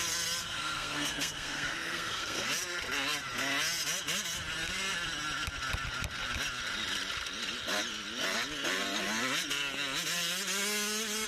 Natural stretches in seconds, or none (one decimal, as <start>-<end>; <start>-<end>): 0.0-0.4; 2.5-11.3